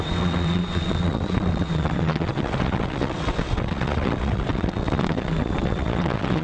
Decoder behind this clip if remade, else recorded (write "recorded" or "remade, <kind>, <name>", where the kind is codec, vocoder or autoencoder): remade, vocoder, WaveNeXt